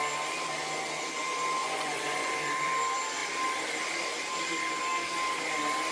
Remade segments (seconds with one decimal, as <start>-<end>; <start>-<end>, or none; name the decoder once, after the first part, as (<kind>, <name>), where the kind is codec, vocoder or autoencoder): 1.6-2.3 (vocoder, Vocos)

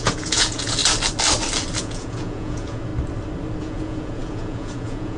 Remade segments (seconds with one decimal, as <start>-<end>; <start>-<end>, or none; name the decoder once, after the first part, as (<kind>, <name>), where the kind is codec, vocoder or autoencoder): 0.0-0.8 (vocoder, Vocos); 1.8-2.9; 3.6-5.2

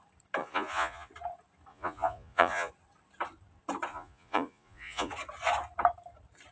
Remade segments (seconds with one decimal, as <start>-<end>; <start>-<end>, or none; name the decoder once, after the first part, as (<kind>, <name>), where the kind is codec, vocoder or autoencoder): 0.4-1.1 (vocoder, Vocos); 1.7-2.7; 3.9-5.1

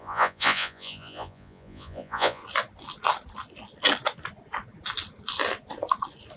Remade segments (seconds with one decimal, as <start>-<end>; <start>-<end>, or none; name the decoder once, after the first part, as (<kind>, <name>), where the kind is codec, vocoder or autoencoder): 0.0-2.4 (vocoder, Vocos)

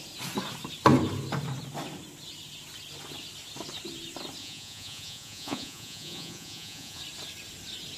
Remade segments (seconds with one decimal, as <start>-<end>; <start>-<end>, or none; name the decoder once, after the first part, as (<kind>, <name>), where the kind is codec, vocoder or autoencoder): 4.4-7.0 (vocoder, Vocos)